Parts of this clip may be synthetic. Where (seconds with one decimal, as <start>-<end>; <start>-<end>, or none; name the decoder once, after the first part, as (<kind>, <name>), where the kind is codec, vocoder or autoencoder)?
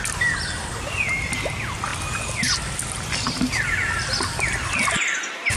0.0-1.9 (vocoder, BigVGAN v2); 2.6-5.6